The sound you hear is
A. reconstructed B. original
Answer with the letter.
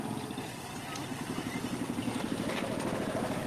B